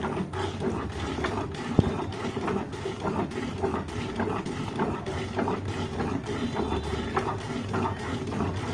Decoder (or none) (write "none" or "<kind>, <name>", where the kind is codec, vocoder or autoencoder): none